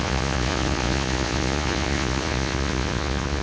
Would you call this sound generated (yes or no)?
yes